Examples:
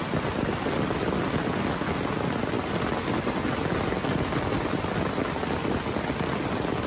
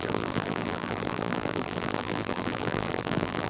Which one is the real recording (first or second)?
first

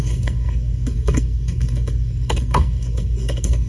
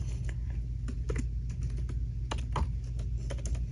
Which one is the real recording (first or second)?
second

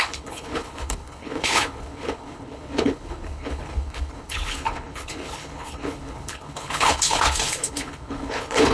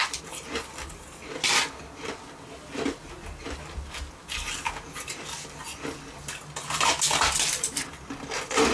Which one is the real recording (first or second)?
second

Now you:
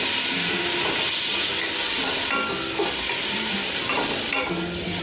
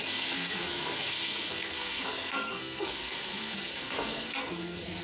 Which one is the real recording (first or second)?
first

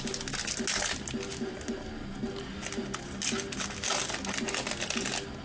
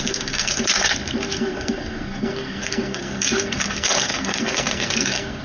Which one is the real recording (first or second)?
first